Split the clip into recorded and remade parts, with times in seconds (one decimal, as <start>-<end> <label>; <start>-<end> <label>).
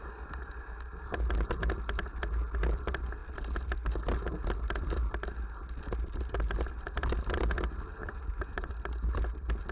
0.0-8.0 recorded; 8.0-8.7 remade; 8.7-9.7 recorded